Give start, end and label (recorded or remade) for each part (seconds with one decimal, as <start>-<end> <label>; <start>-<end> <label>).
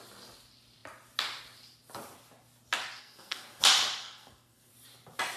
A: 0.0-3.0 recorded; 3.0-3.6 remade; 3.6-4.0 recorded; 4.0-4.7 remade; 4.7-5.4 recorded